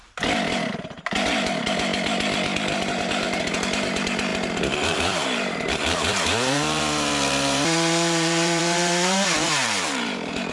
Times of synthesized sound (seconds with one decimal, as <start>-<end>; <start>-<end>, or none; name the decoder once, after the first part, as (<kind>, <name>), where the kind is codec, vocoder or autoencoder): 0.0-1.9 (vocoder, BigVGAN v2); 2.9-10.5